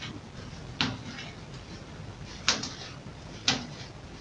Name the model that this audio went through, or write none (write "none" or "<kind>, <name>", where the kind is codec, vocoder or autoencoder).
none